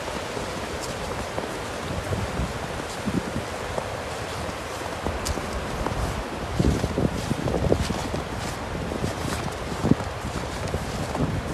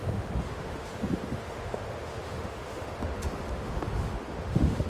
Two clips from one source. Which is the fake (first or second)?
second